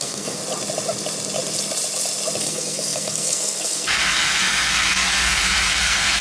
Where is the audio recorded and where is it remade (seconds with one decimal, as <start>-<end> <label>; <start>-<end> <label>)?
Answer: 0.0-0.4 remade; 0.4-2.4 recorded; 2.4-6.2 remade